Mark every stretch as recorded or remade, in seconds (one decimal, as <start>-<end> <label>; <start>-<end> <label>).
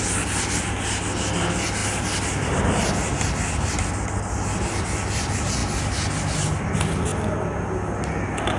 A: 0.0-8.6 recorded